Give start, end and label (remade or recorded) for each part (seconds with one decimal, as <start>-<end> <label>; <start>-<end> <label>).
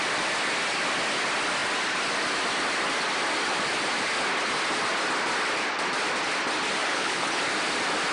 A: 0.0-6.8 recorded; 6.8-7.4 remade; 7.4-8.1 recorded